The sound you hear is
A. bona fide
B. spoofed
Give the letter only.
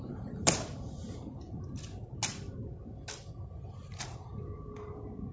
A